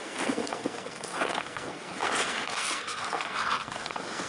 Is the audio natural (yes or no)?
no